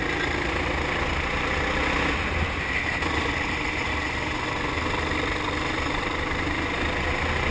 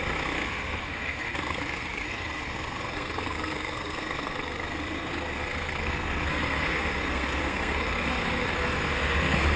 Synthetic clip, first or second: second